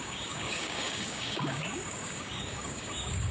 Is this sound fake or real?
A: fake